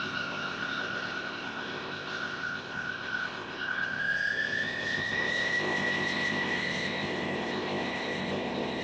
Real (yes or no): no